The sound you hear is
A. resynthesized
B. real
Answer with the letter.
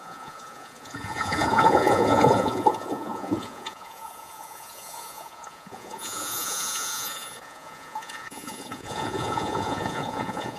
A